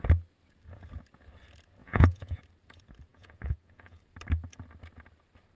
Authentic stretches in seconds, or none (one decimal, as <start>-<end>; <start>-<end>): 0.0-1.8; 2.4-3.1; 4.0-5.5